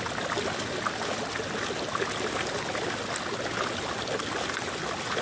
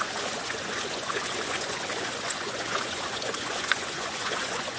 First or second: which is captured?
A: first